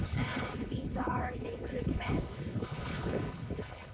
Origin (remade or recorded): remade